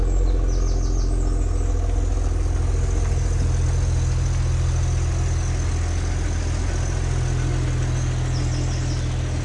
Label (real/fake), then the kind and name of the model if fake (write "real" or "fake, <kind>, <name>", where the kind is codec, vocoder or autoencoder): real